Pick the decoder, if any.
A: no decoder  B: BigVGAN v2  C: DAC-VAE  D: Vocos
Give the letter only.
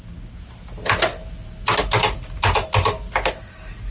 A